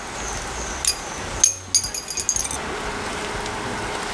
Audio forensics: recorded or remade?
recorded